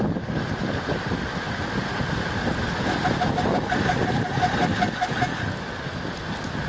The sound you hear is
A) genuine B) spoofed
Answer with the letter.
A